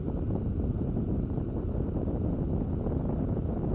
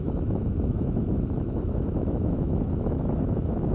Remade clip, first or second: second